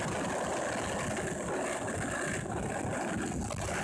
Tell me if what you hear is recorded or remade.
recorded